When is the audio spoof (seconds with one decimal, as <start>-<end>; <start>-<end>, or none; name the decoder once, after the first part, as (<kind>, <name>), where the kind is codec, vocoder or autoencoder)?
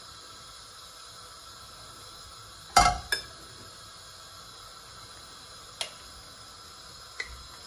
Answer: none